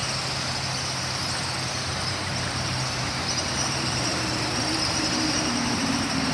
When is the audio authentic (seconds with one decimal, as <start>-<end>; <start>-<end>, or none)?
0.0-1.9

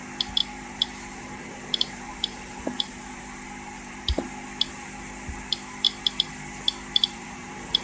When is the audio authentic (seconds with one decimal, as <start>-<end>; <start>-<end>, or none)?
0.0-0.4; 4.3-7.0

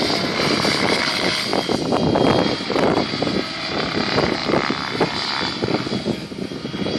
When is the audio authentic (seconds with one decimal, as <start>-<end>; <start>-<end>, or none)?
1.5-2.5; 4.4-5.9

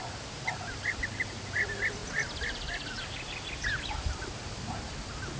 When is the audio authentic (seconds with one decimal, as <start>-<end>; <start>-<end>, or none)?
2.0-5.4

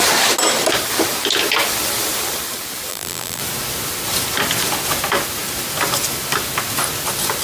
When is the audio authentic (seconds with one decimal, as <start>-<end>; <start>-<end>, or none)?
0.0-2.9; 3.4-7.4

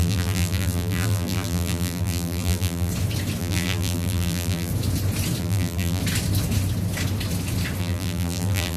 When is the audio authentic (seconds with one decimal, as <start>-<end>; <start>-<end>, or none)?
2.9-3.4; 4.7-5.4; 6.0-7.8

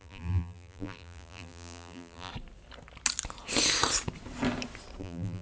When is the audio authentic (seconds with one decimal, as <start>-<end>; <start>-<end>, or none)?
2.3-5.0